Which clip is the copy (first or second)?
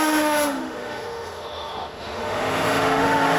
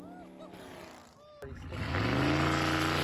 first